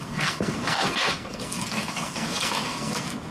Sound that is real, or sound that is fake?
fake